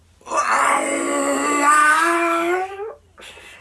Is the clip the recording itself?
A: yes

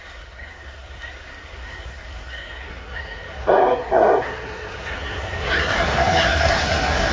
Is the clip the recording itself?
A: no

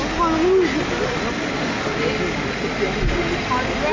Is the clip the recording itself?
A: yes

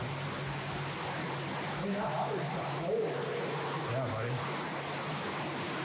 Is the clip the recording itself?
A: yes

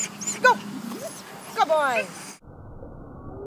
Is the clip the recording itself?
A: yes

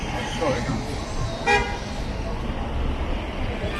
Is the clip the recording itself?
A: yes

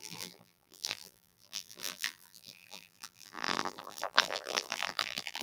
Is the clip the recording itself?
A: no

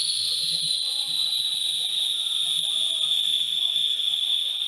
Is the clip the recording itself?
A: yes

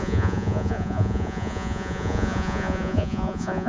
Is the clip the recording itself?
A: no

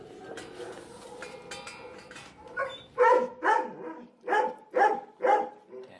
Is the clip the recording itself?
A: yes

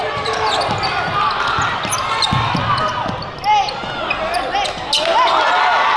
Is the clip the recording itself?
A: yes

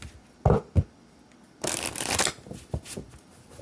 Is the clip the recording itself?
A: yes